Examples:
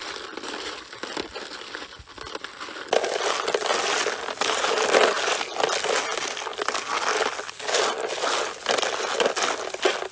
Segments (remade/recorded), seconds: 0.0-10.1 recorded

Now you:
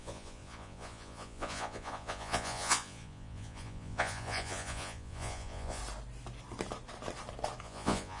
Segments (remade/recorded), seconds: 0.0-5.8 remade; 5.8-7.6 recorded; 7.6-8.2 remade

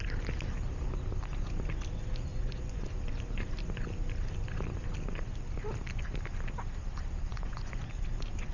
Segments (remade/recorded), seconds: 0.0-2.3 recorded; 2.3-2.9 remade; 2.9-7.3 recorded; 7.3-7.8 remade; 7.8-8.5 recorded

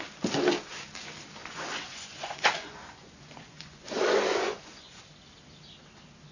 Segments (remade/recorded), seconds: 0.0-1.4 recorded; 1.4-5.0 remade; 5.0-6.3 recorded